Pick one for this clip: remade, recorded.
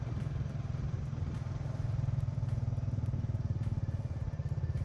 remade